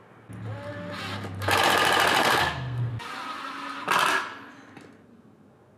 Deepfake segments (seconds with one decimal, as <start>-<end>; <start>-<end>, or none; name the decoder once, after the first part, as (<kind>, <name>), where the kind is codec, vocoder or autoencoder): 2.2-2.9 (codec, SNAC)